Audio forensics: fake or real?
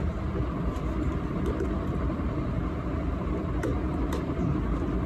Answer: real